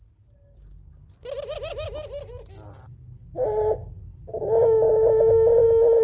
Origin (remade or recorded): recorded